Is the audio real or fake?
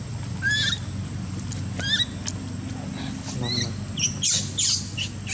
real